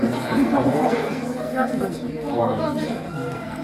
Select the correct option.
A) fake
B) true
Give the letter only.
A